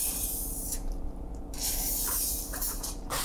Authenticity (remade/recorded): remade